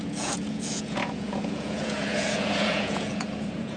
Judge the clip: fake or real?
fake